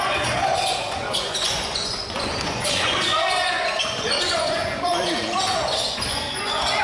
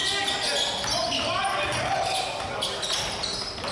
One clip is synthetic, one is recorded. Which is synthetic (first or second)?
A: first